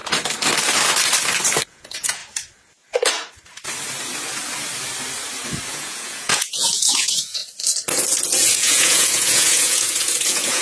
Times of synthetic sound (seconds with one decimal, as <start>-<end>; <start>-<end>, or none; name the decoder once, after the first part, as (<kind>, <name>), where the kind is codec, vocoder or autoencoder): 1.7-2.2 (vocoder, Vocos); 5.7-7.4; 8.1-10.6